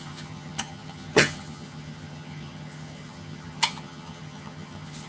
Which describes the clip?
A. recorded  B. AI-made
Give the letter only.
B